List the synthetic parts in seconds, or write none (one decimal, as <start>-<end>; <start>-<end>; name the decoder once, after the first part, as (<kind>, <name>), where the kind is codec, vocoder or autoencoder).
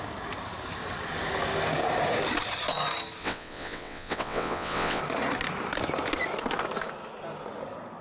3.2-5.0 (vocoder, WaveNeXt)